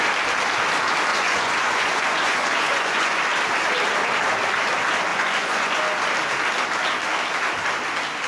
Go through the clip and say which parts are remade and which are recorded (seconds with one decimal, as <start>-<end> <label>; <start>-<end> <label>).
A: 0.0-1.1 recorded; 1.1-3.2 remade; 3.2-5.1 recorded; 5.1-5.8 remade; 5.8-8.3 recorded